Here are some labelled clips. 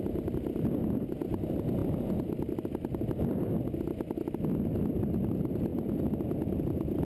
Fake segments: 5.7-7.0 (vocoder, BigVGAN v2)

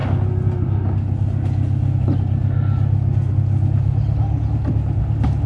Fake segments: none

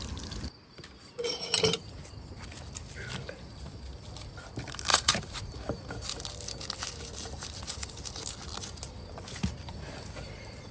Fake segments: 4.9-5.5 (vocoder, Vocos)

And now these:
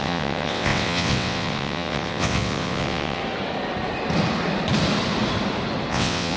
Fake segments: 0.0-3.2 (vocoder, WaveNeXt); 5.9-6.4